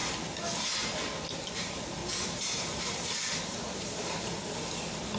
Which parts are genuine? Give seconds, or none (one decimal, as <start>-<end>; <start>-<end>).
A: 0.0-1.2; 4.2-5.2

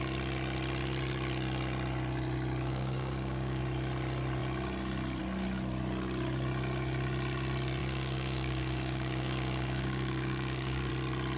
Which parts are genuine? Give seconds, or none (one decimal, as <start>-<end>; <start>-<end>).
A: 0.0-2.7; 3.6-7.8; 10.9-11.4

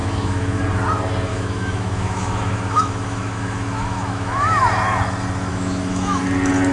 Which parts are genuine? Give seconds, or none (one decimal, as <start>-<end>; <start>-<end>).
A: 0.6-1.3; 4.6-5.5; 6.2-6.7

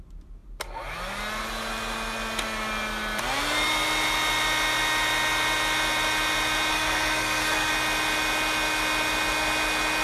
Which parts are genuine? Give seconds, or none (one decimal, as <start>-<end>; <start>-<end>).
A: 0.0-6.7; 7.7-10.0

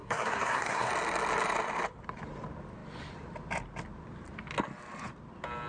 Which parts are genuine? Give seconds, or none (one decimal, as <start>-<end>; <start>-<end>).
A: 0.9-5.7

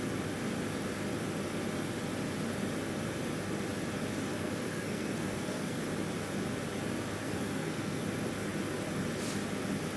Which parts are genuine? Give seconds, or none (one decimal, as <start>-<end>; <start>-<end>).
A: 0.0-4.3; 5.8-7.2; 8.0-10.0

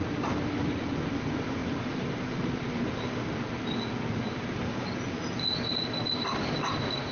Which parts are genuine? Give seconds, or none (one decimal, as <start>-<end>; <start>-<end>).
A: 0.0-7.1